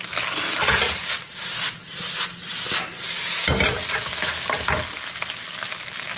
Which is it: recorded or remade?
recorded